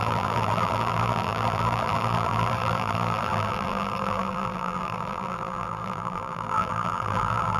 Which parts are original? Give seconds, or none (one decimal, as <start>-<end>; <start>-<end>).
none